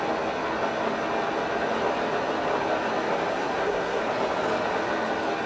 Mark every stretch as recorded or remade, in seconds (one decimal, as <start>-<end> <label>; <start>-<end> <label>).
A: 0.0-3.3 recorded; 3.3-4.0 remade; 4.0-5.5 recorded